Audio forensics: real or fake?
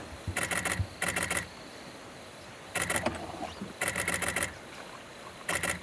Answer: real